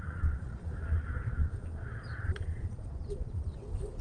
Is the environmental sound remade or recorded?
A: remade